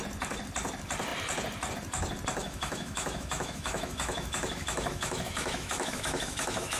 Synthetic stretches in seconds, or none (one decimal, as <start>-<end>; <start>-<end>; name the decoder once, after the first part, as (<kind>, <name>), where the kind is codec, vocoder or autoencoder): 2.4-6.8 (autoencoder, DAC-VAE)